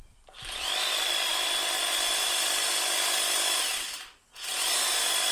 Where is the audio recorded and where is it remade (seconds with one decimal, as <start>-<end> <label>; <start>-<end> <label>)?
0.0-1.3 recorded; 1.3-4.5 remade; 4.5-5.3 recorded